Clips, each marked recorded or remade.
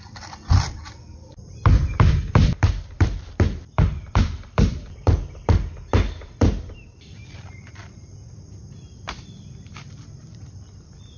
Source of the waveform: remade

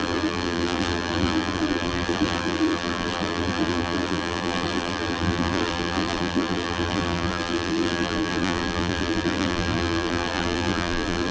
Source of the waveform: remade